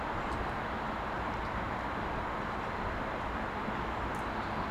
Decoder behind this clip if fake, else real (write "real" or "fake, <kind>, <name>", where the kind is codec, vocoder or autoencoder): real